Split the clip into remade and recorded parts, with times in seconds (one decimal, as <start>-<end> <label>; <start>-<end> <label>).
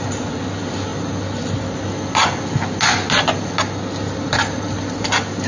0.0-5.5 recorded